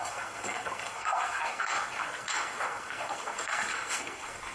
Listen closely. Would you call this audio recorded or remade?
remade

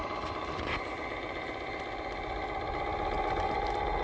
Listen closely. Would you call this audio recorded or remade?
recorded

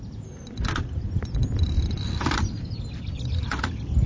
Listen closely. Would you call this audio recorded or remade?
recorded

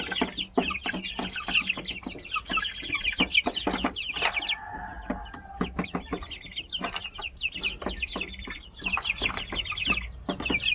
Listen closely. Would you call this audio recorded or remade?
recorded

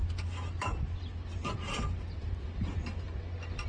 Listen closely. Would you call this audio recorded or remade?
recorded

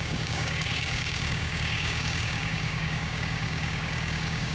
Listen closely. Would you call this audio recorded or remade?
remade